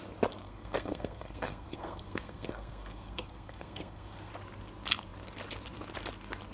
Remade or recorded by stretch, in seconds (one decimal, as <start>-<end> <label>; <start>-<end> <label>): 0.0-0.4 recorded; 0.4-4.3 remade; 4.3-6.5 recorded